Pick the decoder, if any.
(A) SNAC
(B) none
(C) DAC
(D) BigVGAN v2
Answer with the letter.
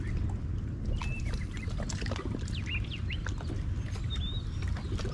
B